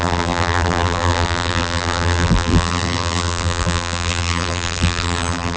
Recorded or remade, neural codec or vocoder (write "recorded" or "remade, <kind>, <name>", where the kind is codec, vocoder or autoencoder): remade, vocoder, BigVGAN v2